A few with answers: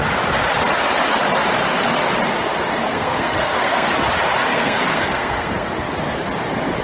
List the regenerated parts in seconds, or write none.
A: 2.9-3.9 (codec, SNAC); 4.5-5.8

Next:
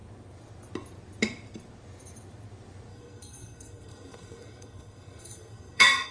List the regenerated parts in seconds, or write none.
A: 2.9-6.1 (codec, SNAC)